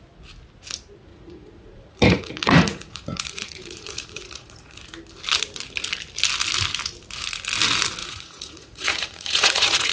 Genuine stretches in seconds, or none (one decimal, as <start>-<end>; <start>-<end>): 0.0-1.1; 4.8-8.0